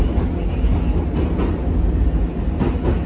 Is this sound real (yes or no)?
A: yes